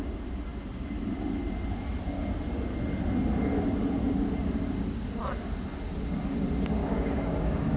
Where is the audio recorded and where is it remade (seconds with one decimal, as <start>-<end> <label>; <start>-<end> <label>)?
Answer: 0.0-6.8 recorded; 6.8-7.8 remade